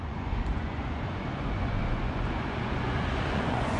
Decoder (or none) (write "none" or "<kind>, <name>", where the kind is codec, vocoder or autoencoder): vocoder, Vocos